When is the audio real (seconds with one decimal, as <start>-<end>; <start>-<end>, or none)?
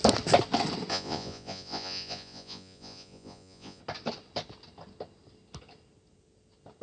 0.0-0.9; 3.8-6.8